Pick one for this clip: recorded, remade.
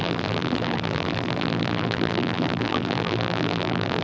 remade